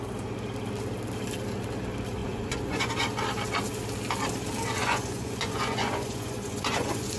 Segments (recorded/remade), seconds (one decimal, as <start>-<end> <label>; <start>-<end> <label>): 0.0-2.2 recorded; 2.2-2.9 remade; 2.9-4.7 recorded; 4.7-7.2 remade